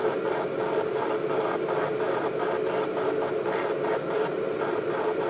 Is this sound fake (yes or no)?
no